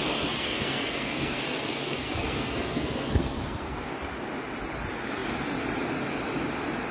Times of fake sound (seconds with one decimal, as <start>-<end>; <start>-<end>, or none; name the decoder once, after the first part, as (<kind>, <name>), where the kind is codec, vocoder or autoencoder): 0.0-3.9 (codec, SNAC)